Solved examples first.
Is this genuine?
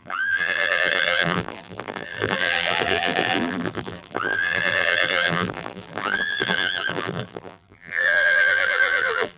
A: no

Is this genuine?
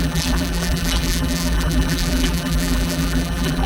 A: no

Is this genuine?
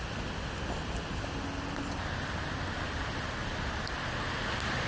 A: yes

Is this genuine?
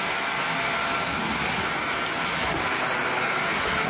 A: yes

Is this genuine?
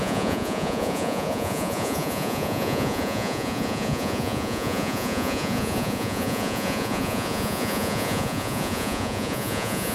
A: no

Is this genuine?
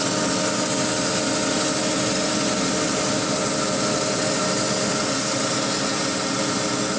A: yes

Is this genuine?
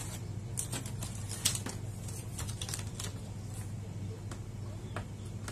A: yes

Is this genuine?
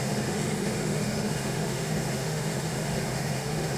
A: no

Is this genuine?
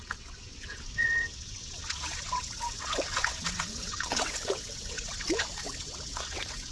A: no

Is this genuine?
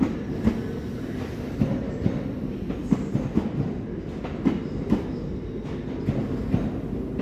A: yes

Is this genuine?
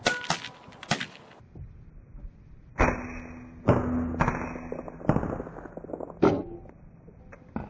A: yes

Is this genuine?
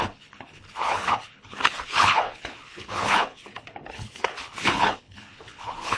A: no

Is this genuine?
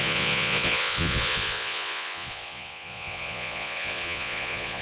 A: no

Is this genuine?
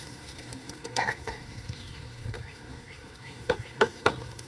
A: no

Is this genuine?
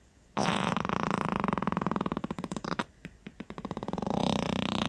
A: no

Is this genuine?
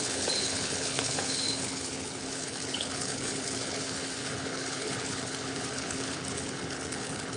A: no